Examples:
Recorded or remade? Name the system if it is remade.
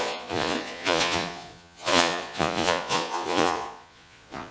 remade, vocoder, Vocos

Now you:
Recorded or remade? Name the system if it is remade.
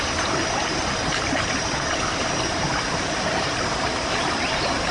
recorded